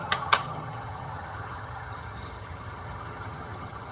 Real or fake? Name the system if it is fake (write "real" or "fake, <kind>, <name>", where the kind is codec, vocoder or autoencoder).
fake, vocoder, HiFi-GAN